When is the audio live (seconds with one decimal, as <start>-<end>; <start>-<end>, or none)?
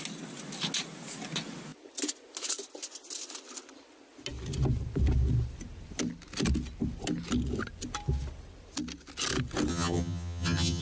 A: 0.0-9.7